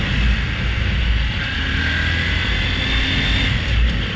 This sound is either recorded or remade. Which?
recorded